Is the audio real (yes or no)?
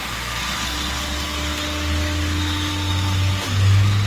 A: yes